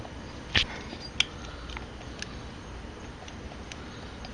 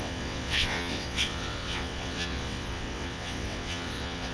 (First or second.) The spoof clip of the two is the second